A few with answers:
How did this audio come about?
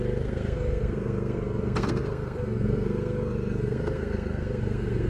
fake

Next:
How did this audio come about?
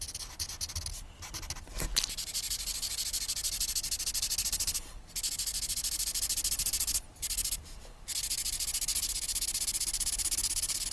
real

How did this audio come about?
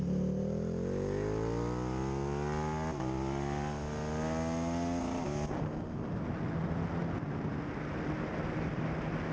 real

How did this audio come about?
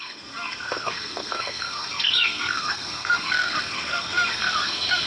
fake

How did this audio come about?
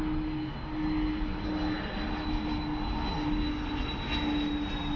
real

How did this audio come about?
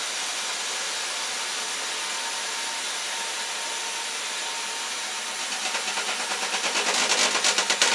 real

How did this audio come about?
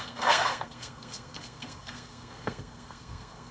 fake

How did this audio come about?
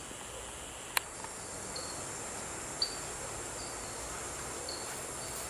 real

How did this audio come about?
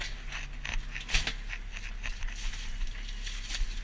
real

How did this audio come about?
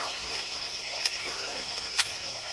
fake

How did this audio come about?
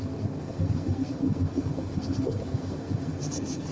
fake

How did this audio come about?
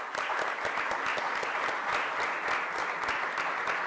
real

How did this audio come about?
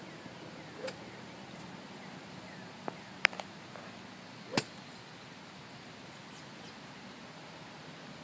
real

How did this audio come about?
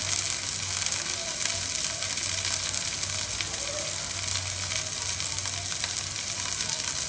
real